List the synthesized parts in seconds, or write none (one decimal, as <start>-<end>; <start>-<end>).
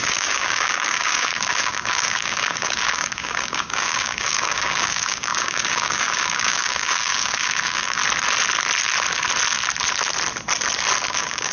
0.0-8.0; 11.1-11.5